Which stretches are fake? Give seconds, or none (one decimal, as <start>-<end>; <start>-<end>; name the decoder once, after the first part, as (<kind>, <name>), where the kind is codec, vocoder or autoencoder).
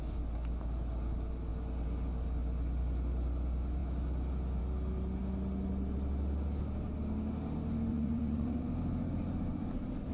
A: 7.9-8.7 (vocoder, Vocos)